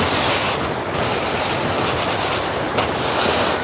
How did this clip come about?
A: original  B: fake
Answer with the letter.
A